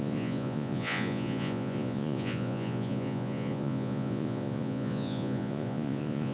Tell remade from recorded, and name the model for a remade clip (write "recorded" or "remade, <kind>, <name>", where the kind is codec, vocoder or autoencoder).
remade, vocoder, Vocos